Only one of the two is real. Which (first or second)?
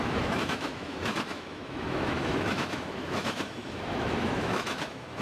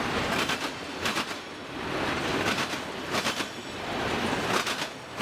second